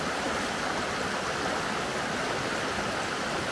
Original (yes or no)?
yes